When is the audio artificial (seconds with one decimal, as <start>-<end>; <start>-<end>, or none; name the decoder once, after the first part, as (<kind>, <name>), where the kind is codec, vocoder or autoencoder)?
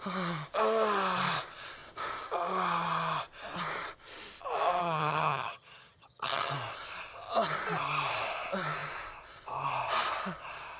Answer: 4.8-6.5 (vocoder, HiFi-GAN)